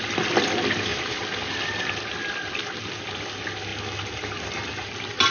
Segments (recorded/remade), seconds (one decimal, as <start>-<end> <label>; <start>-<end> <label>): 0.0-5.3 recorded